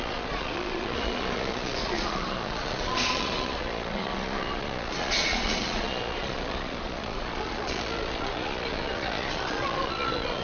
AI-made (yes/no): yes